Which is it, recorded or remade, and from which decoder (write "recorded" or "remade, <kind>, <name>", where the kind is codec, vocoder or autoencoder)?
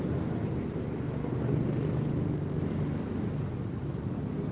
recorded